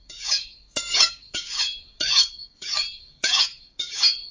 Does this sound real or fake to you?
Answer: fake